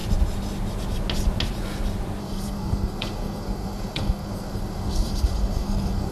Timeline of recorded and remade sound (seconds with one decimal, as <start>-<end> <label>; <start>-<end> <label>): 0.0-2.2 recorded; 2.2-6.1 remade

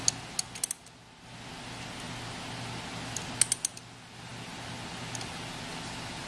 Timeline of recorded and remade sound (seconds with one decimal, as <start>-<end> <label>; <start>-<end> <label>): 0.0-6.3 recorded

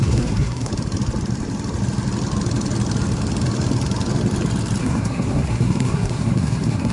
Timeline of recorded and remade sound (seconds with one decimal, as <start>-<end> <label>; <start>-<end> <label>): 0.0-0.7 remade; 0.7-4.8 recorded; 4.8-6.9 remade

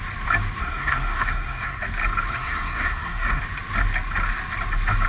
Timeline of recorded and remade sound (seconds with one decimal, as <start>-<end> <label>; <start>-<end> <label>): 0.0-0.6 recorded; 0.6-1.8 remade; 1.8-2.3 recorded; 2.3-3.4 remade; 3.4-5.1 recorded

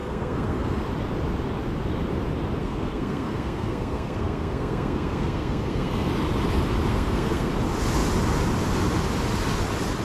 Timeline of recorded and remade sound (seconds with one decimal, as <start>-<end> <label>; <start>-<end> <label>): 0.0-0.8 remade; 0.8-2.6 recorded; 2.6-6.1 remade; 6.1-6.9 recorded; 6.9-7.5 remade; 7.5-10.0 recorded

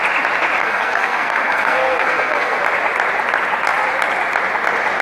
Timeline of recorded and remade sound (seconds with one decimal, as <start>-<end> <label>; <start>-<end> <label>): 0.0-0.6 recorded; 0.6-2.6 remade; 2.6-5.0 recorded